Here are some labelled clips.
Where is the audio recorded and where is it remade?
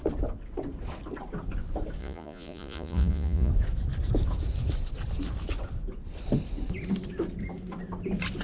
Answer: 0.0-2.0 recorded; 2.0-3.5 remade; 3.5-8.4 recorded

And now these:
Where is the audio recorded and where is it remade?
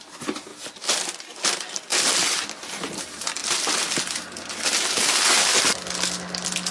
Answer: 0.0-6.7 recorded